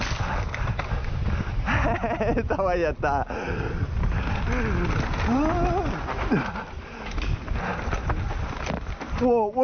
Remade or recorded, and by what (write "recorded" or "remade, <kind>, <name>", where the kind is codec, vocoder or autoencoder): recorded